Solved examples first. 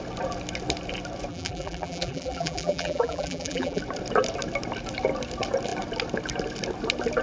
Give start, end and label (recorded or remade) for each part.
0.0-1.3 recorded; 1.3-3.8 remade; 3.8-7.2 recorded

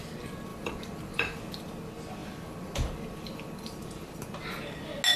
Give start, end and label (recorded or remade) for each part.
0.0-0.5 recorded; 0.5-1.4 remade; 1.4-2.2 recorded; 2.2-4.2 remade; 4.2-5.2 recorded

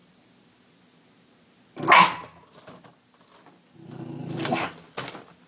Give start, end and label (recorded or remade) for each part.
0.0-4.2 recorded; 4.2-4.8 remade; 4.8-5.5 recorded

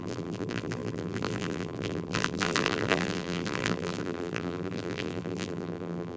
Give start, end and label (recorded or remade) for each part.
0.0-6.2 remade

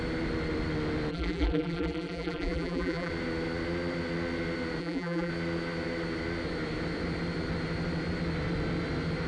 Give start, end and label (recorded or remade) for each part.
0.0-1.1 recorded; 1.1-3.1 remade; 3.1-4.8 recorded; 4.8-5.3 remade; 5.3-9.3 recorded